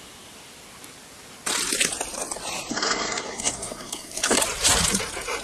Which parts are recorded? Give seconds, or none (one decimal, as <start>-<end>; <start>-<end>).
0.0-2.7; 4.4-5.4